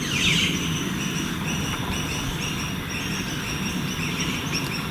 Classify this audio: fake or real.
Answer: real